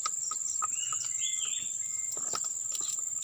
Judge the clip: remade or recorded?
recorded